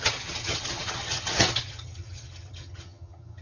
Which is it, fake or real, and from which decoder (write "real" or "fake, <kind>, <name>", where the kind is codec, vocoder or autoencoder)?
fake, vocoder, HiFi-GAN